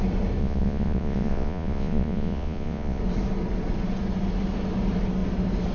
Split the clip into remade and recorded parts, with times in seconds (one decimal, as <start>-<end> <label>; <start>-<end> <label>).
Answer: 0.0-0.4 recorded; 0.4-3.0 remade; 3.0-5.7 recorded